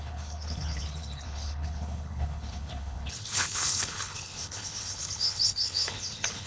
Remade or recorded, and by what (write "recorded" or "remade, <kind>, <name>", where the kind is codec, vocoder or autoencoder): remade, codec, HILCodec